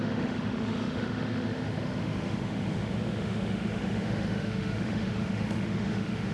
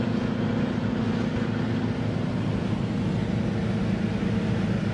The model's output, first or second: first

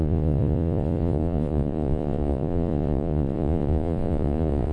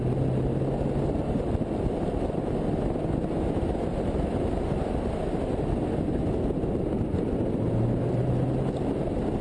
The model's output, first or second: first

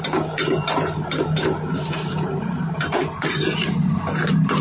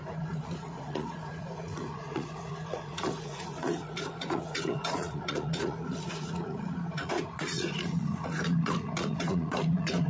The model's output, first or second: second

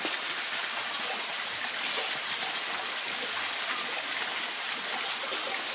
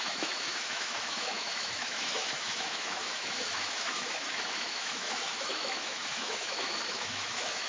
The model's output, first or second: second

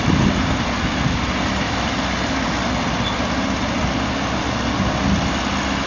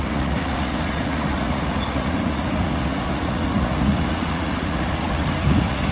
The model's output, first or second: second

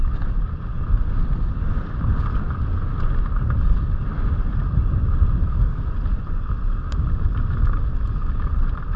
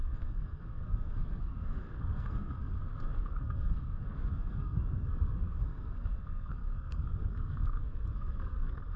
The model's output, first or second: second